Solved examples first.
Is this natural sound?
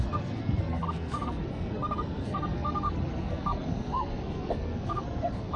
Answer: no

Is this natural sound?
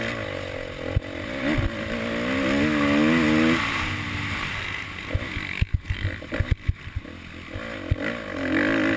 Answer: yes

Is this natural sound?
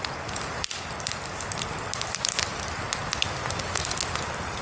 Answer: yes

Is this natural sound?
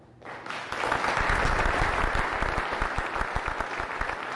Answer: yes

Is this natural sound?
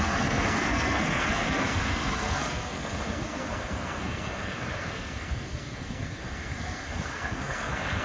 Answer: no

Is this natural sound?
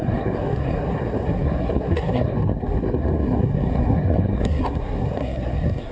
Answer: no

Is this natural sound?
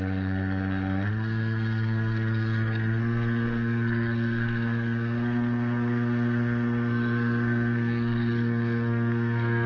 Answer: no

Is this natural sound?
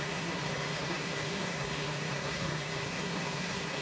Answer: no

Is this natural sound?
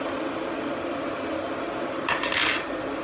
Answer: yes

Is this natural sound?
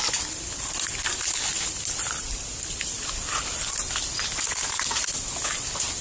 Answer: yes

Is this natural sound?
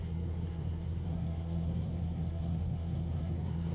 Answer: no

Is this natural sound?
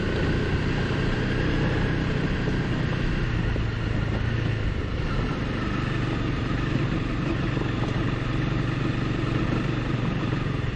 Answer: yes